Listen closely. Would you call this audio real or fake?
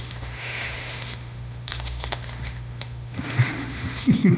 fake